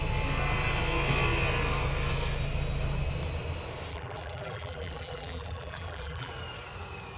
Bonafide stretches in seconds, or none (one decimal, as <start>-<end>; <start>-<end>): 0.0-3.9; 6.3-7.2